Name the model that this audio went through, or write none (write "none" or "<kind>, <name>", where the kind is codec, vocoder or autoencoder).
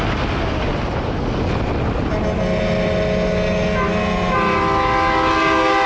none